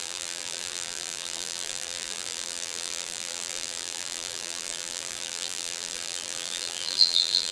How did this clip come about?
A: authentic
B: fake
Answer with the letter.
B